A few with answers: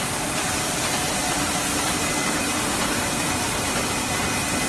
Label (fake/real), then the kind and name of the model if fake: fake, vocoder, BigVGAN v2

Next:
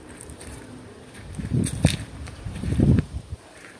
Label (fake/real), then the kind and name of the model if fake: fake, vocoder, BigVGAN v2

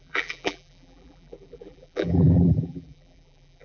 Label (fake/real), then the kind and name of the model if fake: fake, vocoder, BigVGAN v2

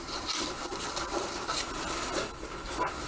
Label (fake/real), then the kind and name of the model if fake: real